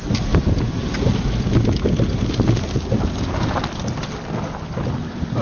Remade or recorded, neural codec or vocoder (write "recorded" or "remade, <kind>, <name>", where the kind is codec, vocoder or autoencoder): recorded